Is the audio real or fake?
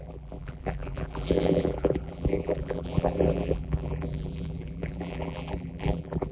fake